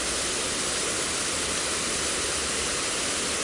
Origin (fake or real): real